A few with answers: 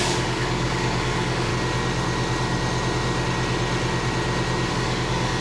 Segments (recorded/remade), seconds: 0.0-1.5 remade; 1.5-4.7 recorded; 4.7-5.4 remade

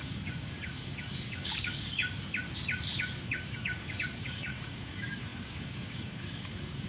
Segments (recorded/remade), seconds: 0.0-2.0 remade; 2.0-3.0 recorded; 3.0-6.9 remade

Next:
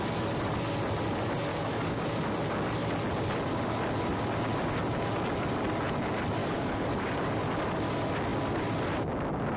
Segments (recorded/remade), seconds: 0.0-1.5 recorded; 1.5-2.2 remade; 2.2-6.4 recorded; 6.4-7.1 remade; 7.1-9.6 recorded